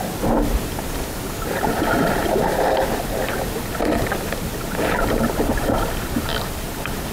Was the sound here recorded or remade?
remade